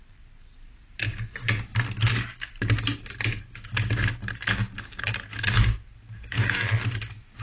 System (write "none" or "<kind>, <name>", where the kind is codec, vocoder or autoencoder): none